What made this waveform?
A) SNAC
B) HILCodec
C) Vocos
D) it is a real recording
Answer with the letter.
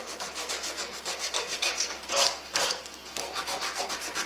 A